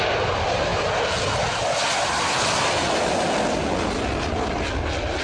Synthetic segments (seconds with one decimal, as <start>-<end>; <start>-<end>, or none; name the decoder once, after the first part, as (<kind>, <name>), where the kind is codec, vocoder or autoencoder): none